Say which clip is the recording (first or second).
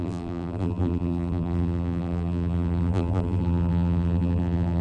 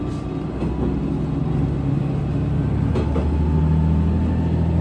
second